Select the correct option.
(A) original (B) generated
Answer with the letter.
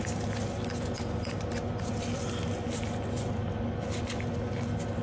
A